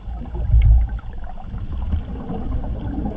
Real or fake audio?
real